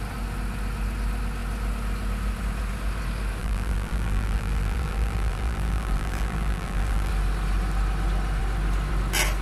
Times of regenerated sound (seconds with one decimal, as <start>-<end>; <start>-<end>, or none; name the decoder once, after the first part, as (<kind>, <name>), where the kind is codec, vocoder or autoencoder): 3.4-7.1 (vocoder, BigVGAN v2)